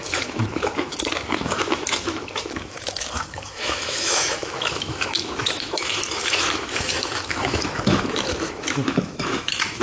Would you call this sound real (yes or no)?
no